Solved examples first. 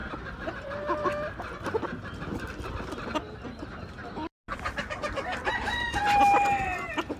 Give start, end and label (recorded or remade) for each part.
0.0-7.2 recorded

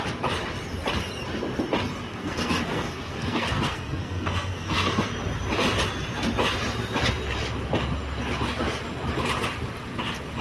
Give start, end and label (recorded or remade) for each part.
0.0-2.1 recorded; 2.1-5.1 remade; 5.1-10.4 recorded

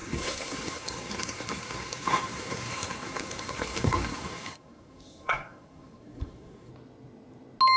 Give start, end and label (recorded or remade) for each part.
0.0-6.7 remade; 6.7-7.8 recorded